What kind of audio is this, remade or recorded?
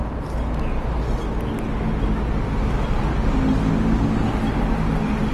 recorded